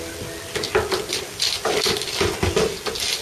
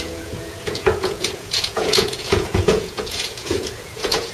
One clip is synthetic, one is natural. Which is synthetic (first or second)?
second